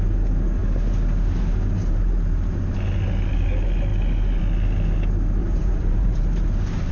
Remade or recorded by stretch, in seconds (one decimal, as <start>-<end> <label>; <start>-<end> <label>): 0.0-5.4 recorded; 5.4-6.2 remade; 6.2-6.9 recorded